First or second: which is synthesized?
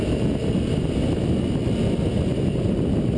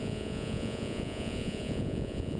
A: second